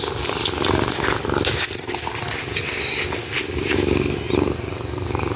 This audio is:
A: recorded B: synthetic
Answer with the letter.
A